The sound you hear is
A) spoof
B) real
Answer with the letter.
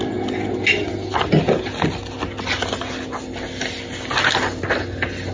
B